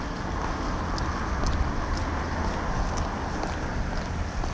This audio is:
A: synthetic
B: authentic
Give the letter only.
B